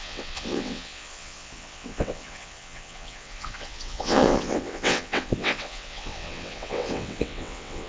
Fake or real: fake